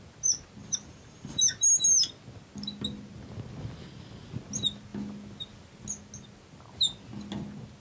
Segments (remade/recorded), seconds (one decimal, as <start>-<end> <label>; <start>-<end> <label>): 0.0-0.6 recorded; 0.6-1.4 remade; 1.4-7.8 recorded